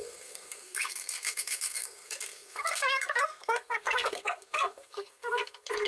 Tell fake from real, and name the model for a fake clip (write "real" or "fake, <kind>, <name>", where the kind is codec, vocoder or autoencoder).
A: fake, codec, SNAC